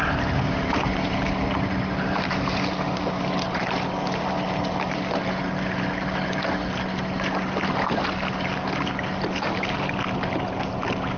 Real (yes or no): yes